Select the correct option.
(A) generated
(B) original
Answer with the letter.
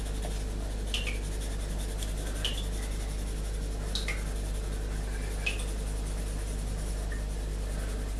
B